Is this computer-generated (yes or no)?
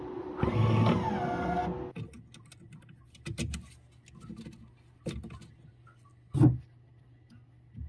no